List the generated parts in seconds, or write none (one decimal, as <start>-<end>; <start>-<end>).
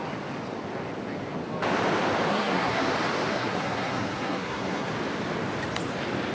2.3-2.9; 3.3-4.9